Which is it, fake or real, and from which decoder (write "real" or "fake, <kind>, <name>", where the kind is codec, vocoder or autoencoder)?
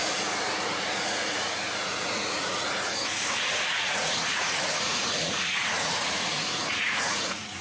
fake, vocoder, Vocos